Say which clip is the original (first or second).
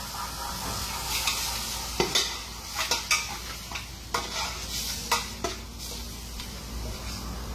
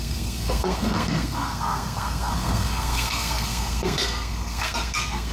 first